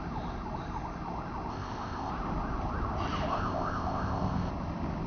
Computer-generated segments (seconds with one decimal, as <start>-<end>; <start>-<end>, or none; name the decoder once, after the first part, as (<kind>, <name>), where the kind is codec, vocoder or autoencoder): 1.5-2.1 (codec, ZipCodec); 3.3-4.5